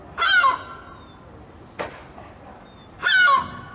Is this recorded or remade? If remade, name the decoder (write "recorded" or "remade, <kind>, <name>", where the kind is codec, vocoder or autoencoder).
recorded